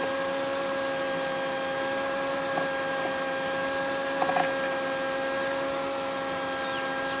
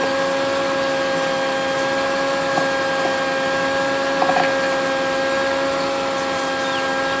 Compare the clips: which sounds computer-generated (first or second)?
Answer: first